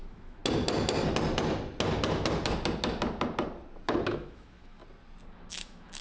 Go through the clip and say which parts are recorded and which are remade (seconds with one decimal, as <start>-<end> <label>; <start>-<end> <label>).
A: 0.0-0.4 remade; 0.4-4.0 recorded; 4.0-4.8 remade; 4.8-5.5 recorded; 5.5-6.0 remade

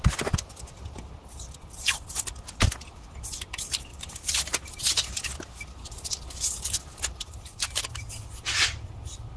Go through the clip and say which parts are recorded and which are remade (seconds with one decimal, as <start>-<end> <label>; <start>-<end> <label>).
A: 0.0-3.9 recorded; 3.9-5.2 remade; 5.2-6.9 recorded; 6.9-8.1 remade; 8.1-9.4 recorded

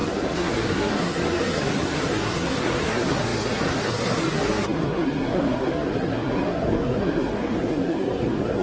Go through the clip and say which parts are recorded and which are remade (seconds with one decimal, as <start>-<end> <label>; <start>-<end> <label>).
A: 0.0-8.6 remade

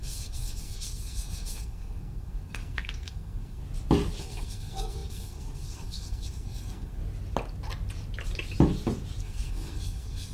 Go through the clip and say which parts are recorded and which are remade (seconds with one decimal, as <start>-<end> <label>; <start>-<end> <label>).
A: 0.0-3.6 remade; 3.6-4.2 recorded; 4.2-7.0 remade; 7.0-9.2 recorded; 9.2-10.3 remade

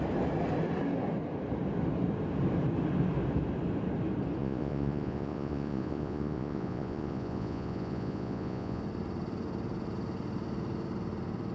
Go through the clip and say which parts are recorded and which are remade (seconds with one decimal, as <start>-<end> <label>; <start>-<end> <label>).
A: 0.0-4.4 recorded; 4.4-8.8 remade; 8.8-11.5 recorded